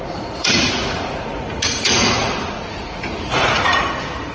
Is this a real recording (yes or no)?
no